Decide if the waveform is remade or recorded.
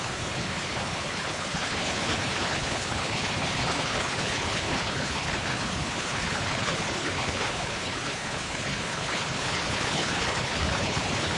remade